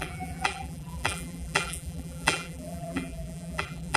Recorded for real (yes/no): no